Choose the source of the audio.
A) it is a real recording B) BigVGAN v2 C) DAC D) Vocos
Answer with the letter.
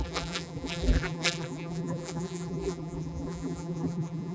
B